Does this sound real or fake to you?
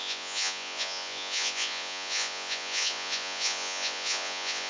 fake